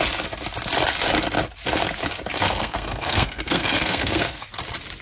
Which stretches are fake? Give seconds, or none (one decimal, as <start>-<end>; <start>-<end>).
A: 2.3-4.5